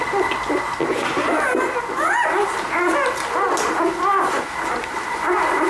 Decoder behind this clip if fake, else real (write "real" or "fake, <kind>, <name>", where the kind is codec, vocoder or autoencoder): real